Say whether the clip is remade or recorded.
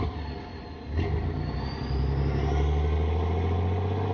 recorded